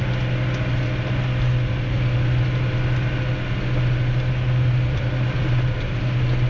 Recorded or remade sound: recorded